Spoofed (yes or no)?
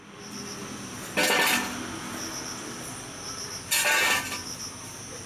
no